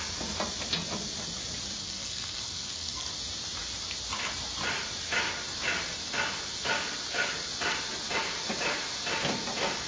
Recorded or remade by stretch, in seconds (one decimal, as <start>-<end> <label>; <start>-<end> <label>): 0.0-1.8 recorded; 1.8-3.1 remade; 3.1-9.9 recorded